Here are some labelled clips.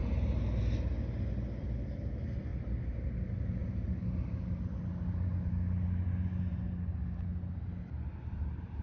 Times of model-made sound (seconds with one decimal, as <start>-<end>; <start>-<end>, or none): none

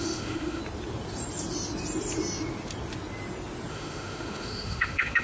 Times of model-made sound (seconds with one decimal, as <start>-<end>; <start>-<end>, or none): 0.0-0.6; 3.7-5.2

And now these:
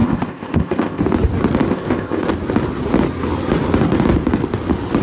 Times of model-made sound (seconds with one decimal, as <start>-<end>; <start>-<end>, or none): 0.0-1.0; 1.7-2.3